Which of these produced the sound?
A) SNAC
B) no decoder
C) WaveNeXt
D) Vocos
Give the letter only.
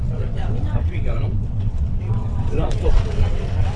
C